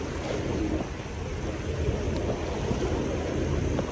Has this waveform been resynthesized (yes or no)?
no